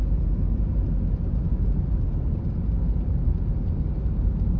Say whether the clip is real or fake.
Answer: real